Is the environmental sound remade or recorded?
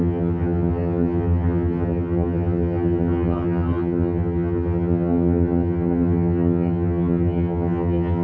remade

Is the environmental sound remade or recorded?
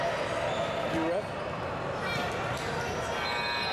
recorded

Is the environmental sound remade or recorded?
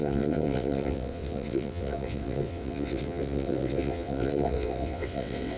remade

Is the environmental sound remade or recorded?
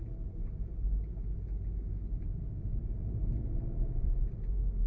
recorded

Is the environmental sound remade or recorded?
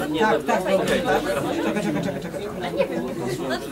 recorded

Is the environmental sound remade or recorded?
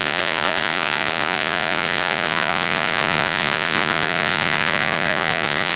remade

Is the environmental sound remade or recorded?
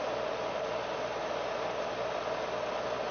recorded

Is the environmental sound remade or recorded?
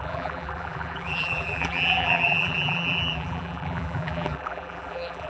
remade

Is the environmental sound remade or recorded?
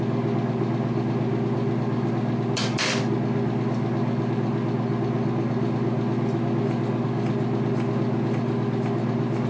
recorded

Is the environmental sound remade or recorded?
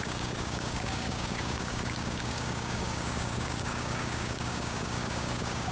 remade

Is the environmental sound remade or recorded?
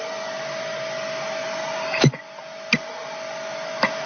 recorded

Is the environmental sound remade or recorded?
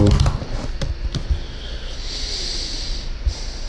recorded